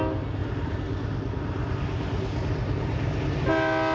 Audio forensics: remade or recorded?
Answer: recorded